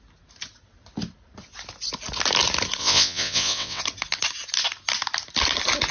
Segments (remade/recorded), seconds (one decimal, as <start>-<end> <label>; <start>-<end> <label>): 0.0-2.8 recorded; 2.8-3.8 remade; 3.8-5.9 recorded

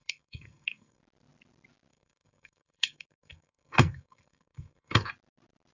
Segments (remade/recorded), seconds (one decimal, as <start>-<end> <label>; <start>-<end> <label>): 0.0-1.0 remade; 1.0-1.9 recorded; 1.9-5.1 remade; 5.1-5.8 recorded

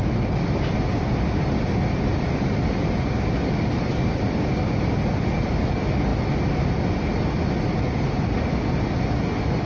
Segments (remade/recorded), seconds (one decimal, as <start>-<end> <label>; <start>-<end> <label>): 0.0-9.7 recorded

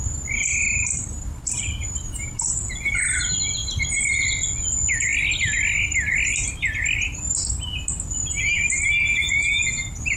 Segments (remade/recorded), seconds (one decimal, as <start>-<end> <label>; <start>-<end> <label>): 0.0-9.1 recorded; 9.1-9.7 remade; 9.7-10.2 recorded

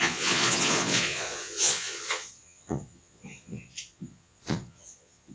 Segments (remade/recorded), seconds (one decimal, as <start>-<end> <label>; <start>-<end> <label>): 0.0-5.3 remade